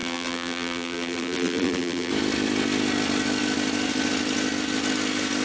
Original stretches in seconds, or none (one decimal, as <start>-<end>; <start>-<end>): 2.1-5.4